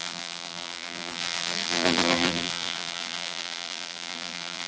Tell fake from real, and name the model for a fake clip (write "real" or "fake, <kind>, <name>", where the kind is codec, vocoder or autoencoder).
fake, vocoder, BigVGAN v2